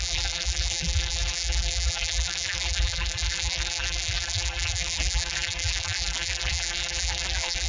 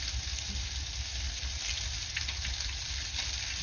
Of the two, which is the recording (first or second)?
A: second